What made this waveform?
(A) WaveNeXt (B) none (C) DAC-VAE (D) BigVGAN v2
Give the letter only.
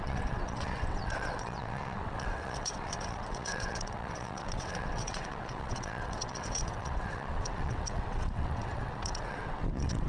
A